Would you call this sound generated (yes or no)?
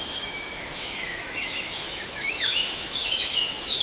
yes